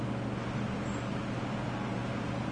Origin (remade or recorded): recorded